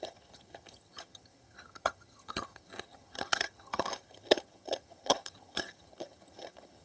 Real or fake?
fake